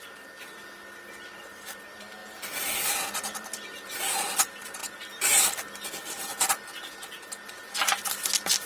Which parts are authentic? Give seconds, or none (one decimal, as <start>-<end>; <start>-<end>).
0.0-8.7